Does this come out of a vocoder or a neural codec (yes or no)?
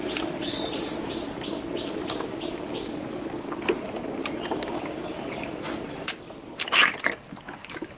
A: yes